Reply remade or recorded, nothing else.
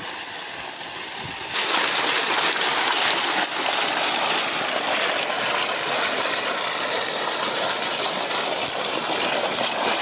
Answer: recorded